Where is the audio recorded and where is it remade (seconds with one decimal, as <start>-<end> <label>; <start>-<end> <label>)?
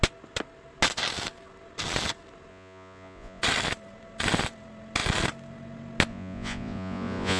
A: 0.0-2.5 recorded; 2.5-3.4 remade; 3.4-6.1 recorded; 6.1-7.4 remade